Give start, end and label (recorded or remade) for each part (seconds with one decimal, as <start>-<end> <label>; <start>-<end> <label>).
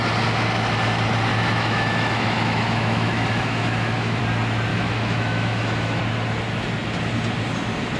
0.0-1.3 recorded; 1.3-4.2 remade; 4.2-4.7 recorded; 4.7-6.0 remade; 6.0-8.0 recorded